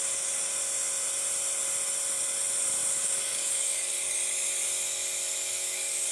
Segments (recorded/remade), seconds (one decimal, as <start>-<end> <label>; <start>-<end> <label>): 0.0-0.5 remade; 0.5-2.9 recorded; 2.9-4.2 remade; 4.2-5.5 recorded; 5.5-6.1 remade